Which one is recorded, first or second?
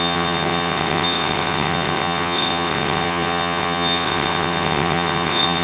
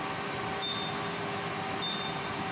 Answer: second